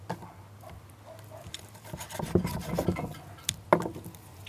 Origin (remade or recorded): recorded